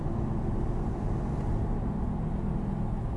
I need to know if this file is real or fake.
real